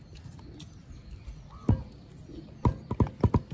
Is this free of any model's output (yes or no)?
yes